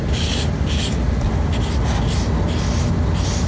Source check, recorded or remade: recorded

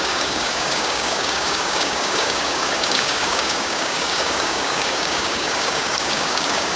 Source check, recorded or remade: remade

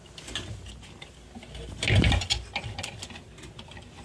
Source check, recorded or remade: recorded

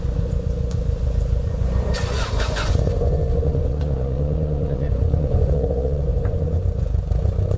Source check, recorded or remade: remade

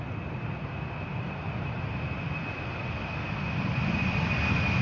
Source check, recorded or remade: recorded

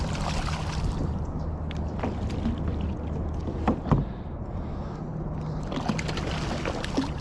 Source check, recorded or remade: recorded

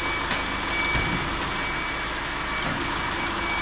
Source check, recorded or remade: recorded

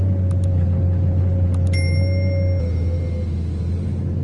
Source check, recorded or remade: recorded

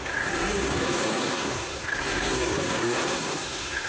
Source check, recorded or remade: remade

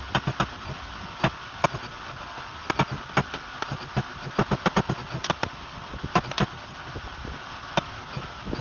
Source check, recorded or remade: recorded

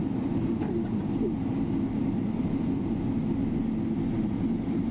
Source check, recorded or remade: recorded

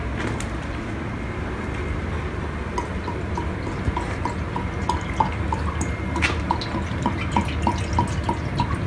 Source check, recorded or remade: recorded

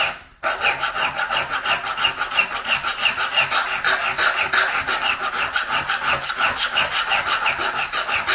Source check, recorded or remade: recorded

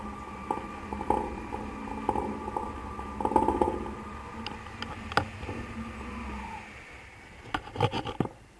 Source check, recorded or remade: recorded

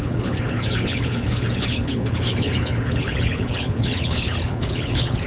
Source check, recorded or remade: remade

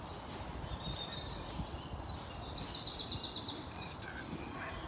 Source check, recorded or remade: recorded